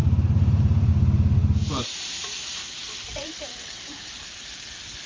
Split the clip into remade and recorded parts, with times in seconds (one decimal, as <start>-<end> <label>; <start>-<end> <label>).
0.0-0.9 remade; 0.9-1.4 recorded; 1.4-4.5 remade; 4.5-5.1 recorded